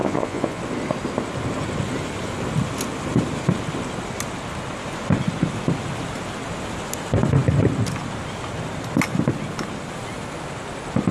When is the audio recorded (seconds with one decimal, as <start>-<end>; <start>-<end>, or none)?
0.6-11.1